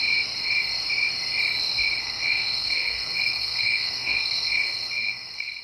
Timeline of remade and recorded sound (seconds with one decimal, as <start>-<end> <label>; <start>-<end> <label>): 0.0-2.0 recorded; 2.0-5.6 remade